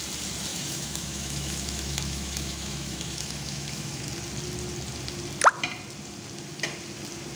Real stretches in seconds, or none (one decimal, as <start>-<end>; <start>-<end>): 0.0-0.5; 4.0-7.4